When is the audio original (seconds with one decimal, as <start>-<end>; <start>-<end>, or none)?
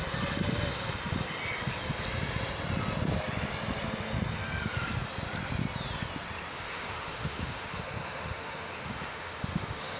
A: 0.0-6.5